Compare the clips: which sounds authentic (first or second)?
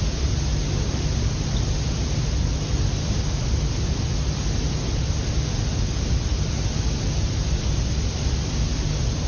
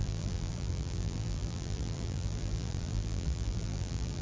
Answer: first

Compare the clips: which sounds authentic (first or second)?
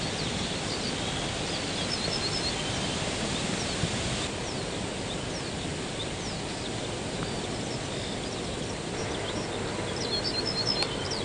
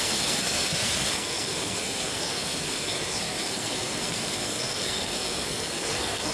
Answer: first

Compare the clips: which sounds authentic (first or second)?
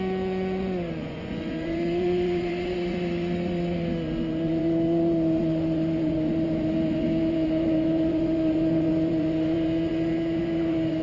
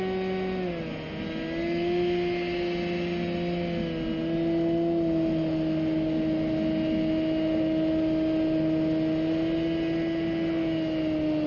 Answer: second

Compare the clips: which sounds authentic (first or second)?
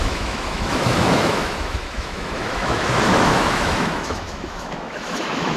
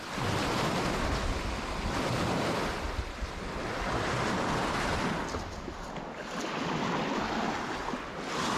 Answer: second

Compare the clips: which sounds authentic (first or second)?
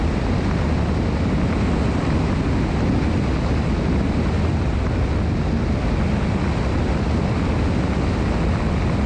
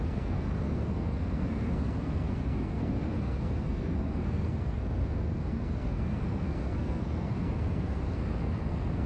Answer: first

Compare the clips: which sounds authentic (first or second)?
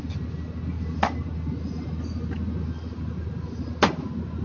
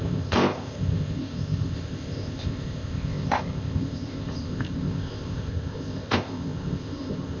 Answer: first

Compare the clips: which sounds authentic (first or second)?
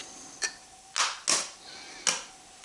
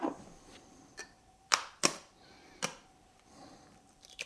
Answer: first